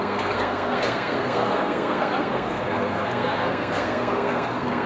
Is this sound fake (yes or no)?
yes